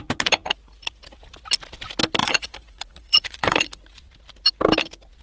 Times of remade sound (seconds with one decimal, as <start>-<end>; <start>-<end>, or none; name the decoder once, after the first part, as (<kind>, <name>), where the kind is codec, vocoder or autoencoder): 2.2-3.8 (vocoder, Vocos)